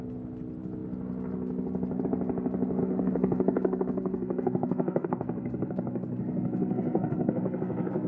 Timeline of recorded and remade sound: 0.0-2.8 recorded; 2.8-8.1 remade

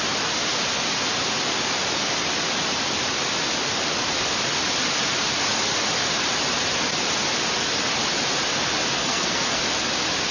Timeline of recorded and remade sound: 0.0-9.0 recorded; 9.0-9.6 remade; 9.6-10.3 recorded